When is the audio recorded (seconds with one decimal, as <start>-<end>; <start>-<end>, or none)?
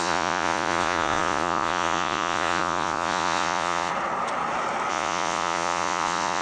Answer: 3.9-4.9